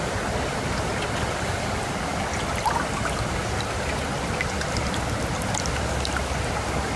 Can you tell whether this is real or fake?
real